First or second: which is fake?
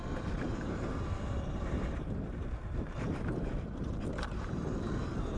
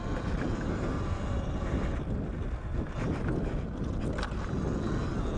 first